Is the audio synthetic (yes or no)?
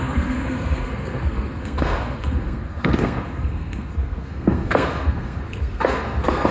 yes